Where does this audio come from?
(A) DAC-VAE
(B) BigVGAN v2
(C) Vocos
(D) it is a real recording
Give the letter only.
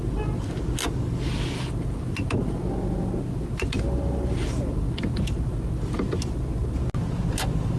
D